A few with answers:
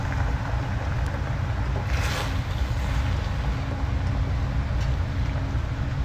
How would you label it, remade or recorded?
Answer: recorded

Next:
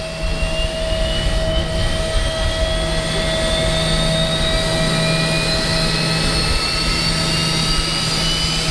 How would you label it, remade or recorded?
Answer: recorded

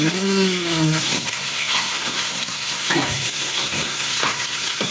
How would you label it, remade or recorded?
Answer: remade